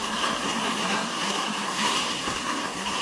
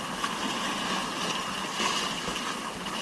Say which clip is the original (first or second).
second